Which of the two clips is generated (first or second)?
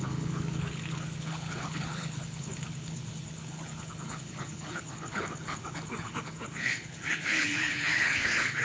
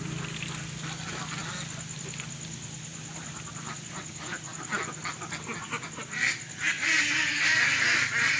first